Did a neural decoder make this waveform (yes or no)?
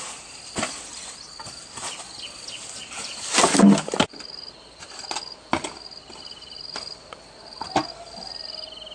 no